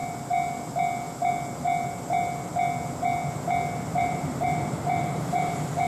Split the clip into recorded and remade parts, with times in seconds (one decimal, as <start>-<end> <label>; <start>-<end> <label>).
0.0-3.9 recorded; 3.9-5.5 remade; 5.5-5.9 recorded